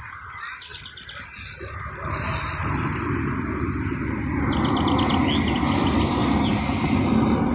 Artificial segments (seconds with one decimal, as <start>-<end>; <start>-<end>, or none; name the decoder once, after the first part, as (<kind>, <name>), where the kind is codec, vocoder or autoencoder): none